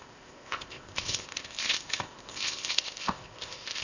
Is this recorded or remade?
remade